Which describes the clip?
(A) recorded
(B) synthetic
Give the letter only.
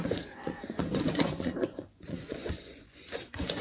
B